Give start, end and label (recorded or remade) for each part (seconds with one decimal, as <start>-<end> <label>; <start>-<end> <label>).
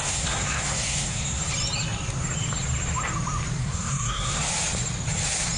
0.0-1.4 remade; 1.4-3.6 recorded; 3.6-4.4 remade; 4.4-5.6 recorded